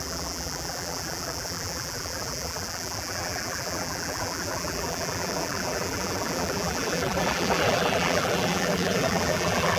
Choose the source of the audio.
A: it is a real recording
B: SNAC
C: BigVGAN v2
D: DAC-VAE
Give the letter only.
C